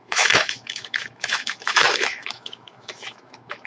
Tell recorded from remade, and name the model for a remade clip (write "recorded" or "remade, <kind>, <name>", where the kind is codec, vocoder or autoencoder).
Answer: remade, autoencoder, DAC-VAE